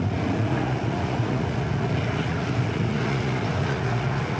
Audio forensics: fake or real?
fake